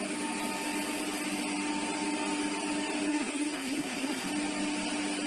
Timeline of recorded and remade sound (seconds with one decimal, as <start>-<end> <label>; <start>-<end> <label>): 0.0-3.1 recorded; 3.1-4.3 remade; 4.3-5.3 recorded